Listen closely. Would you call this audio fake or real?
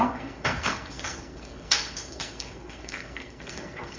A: fake